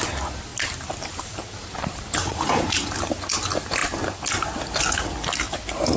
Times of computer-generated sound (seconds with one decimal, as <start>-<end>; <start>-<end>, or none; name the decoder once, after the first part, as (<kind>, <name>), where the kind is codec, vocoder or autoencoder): 2.2-2.9 (vocoder, Vocos)